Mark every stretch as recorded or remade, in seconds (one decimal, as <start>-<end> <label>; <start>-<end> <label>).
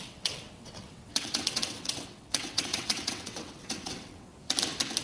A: 0.0-4.3 remade; 4.3-5.0 recorded